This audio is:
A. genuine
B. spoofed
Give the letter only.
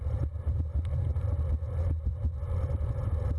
A